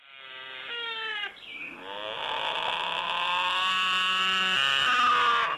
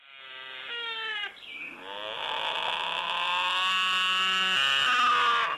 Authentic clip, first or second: second